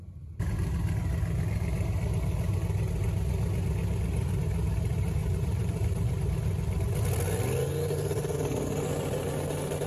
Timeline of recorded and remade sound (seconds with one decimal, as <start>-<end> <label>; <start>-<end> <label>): 0.0-5.2 recorded; 5.2-6.3 remade; 6.3-9.9 recorded